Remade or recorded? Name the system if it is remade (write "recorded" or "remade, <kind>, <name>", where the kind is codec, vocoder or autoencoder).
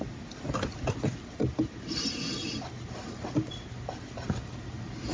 recorded